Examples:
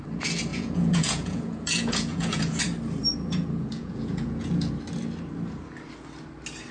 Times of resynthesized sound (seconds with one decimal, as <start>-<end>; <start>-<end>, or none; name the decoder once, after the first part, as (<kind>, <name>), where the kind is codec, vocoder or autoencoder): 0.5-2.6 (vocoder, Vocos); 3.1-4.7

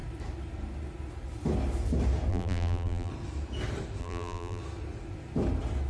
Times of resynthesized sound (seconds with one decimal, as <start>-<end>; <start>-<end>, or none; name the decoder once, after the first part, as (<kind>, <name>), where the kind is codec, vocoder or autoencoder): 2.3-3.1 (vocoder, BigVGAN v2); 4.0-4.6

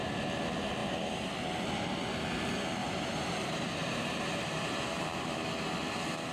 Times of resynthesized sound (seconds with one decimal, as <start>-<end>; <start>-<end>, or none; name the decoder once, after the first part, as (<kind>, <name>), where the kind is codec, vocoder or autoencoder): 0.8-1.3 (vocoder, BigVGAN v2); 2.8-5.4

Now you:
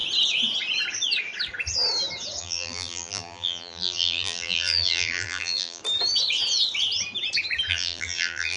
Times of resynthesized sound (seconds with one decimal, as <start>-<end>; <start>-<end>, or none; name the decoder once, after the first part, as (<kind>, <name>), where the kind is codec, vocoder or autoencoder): 2.4-5.8 (vocoder, BigVGAN v2); 7.7-8.6

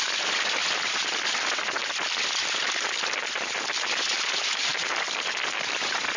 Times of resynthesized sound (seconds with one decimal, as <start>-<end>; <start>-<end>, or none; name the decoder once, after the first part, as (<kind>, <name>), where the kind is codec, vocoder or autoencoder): 0.0-6.2 (vocoder, BigVGAN v2)